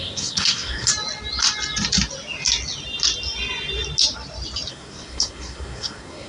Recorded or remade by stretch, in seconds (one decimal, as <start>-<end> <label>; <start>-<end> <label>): 0.0-0.9 remade; 0.9-4.7 recorded; 4.7-6.3 remade